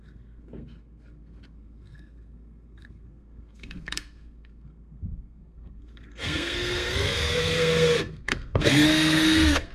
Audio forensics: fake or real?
fake